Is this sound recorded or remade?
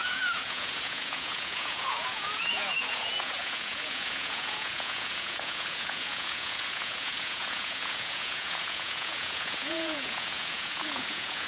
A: remade